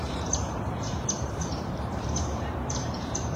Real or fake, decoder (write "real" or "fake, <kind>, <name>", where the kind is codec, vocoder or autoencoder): fake, vocoder, BigVGAN v2